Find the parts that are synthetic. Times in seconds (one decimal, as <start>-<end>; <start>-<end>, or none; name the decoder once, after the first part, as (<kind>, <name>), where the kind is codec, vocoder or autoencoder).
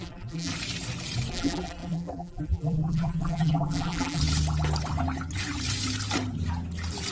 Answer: 0.0-0.5 (vocoder, BigVGAN v2); 1.3-4.2